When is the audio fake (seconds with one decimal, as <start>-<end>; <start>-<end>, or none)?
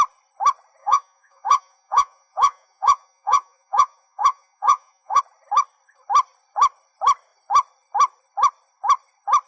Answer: 0.8-5.2